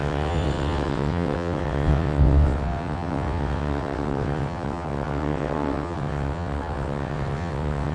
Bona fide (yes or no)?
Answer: no